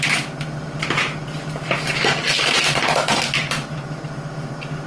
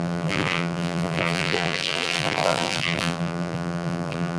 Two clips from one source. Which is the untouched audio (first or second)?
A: first